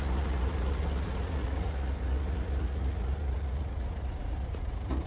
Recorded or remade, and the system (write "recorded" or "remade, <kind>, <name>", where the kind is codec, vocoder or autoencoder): remade, vocoder, Vocos